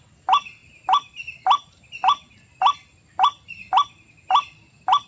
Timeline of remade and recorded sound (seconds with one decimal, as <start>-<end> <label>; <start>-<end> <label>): 0.0-5.1 recorded